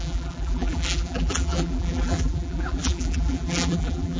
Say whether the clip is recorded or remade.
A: remade